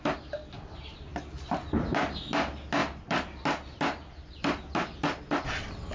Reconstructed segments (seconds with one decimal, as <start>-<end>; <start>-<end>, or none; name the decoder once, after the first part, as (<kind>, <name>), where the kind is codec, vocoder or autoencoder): 0.4-1.1 (vocoder, BigVGAN v2)